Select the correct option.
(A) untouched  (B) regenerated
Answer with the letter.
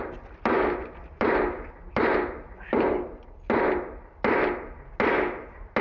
A